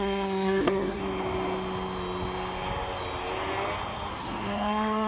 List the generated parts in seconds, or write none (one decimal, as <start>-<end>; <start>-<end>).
0.0-1.0; 4.1-5.1